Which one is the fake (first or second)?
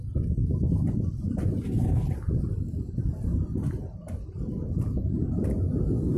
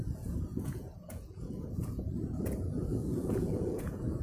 second